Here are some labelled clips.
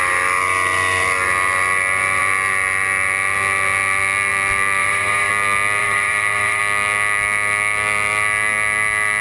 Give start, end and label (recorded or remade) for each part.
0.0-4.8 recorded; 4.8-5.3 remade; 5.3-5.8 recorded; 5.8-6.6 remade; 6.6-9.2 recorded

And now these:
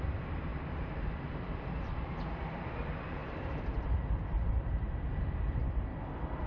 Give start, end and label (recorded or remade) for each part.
0.0-0.5 recorded; 0.5-2.4 remade; 2.4-3.2 recorded; 3.2-5.0 remade; 5.0-6.5 recorded

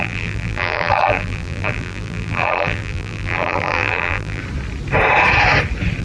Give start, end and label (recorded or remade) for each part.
0.0-4.4 remade; 4.4-6.0 recorded

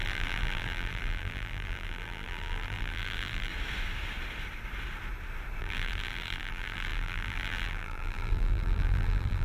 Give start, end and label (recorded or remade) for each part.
0.0-3.5 remade; 3.5-5.6 recorded; 5.6-9.4 remade

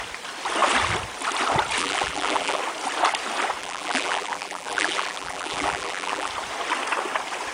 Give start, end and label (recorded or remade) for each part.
0.0-1.8 recorded; 1.8-2.6 remade; 2.6-3.6 recorded; 3.6-6.3 remade; 6.3-7.5 recorded

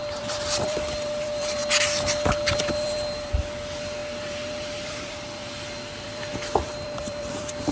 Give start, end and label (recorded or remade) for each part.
0.0-1.6 remade; 1.6-2.5 recorded; 2.5-7.7 remade